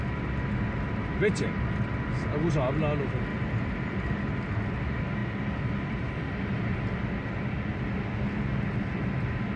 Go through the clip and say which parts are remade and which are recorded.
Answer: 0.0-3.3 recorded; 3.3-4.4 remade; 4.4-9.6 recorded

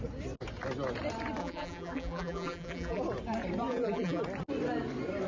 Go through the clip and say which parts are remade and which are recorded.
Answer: 0.0-1.4 recorded; 1.4-3.0 remade; 3.0-3.7 recorded; 3.7-4.2 remade; 4.2-5.3 recorded

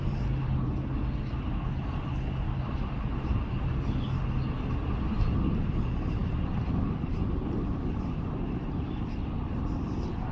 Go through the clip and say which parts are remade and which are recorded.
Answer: 0.0-6.2 recorded; 6.2-9.8 remade; 9.8-10.3 recorded